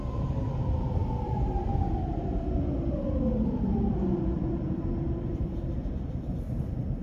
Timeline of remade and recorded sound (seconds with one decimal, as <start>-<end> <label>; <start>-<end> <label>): 0.0-7.0 recorded